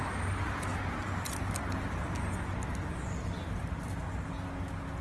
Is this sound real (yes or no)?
yes